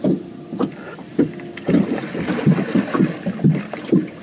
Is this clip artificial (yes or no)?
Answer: no